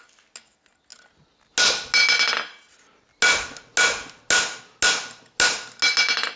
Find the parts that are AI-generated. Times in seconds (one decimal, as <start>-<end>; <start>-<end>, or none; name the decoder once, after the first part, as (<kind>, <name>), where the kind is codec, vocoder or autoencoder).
none